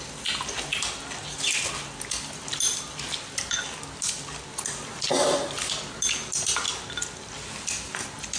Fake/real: real